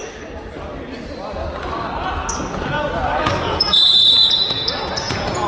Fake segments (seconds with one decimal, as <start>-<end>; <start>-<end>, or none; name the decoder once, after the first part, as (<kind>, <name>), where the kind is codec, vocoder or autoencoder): 3.2-5.5 (vocoder, Vocos)